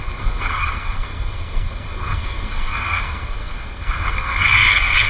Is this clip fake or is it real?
fake